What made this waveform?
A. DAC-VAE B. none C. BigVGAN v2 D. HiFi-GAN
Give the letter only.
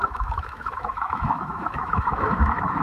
A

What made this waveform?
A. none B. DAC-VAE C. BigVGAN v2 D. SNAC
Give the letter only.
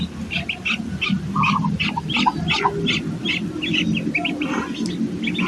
A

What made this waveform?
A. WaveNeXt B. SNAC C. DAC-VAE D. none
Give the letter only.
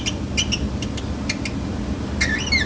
D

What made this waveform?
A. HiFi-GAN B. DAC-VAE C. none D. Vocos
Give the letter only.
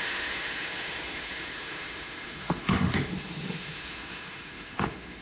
B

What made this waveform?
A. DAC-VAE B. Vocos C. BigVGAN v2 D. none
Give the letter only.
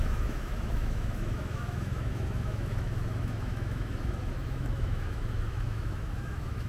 A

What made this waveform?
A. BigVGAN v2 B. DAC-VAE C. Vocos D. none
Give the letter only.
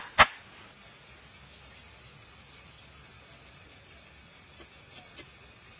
D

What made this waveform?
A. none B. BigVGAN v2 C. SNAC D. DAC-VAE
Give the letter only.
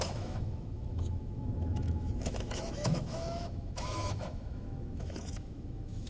D